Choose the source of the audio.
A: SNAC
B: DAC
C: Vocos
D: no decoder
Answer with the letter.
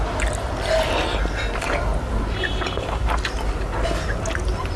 D